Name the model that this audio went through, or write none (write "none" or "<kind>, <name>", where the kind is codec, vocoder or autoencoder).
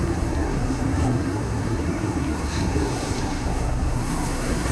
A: codec, SNAC